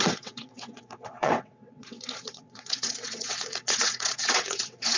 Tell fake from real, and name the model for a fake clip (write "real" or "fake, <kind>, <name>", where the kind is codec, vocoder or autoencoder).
fake, vocoder, WaveNeXt